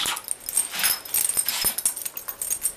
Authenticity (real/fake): real